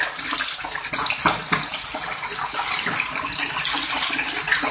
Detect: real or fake real